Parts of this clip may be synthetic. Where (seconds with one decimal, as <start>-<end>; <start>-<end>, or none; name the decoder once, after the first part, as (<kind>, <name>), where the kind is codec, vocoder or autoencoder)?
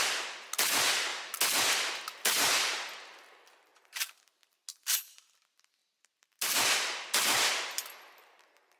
3.7-4.2 (vocoder, BigVGAN v2)